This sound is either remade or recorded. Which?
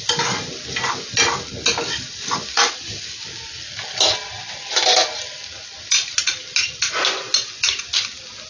recorded